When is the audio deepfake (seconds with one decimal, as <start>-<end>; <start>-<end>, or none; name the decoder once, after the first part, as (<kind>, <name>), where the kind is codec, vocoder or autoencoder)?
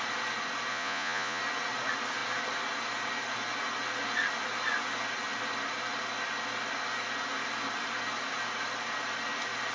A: 0.7-1.4 (vocoder, Vocos)